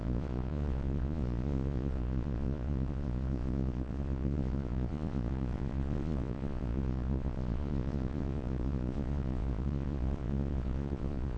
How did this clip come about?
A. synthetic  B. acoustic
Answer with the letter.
A